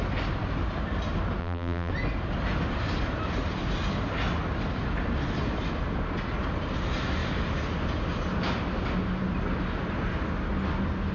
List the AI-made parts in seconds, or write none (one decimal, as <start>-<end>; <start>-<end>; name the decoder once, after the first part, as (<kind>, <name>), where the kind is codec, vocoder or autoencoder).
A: 1.4-1.9 (vocoder, BigVGAN v2)